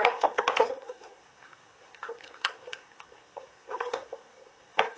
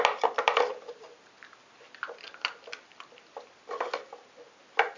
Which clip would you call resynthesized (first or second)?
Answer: first